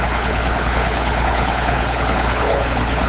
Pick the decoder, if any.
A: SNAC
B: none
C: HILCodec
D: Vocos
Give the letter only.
C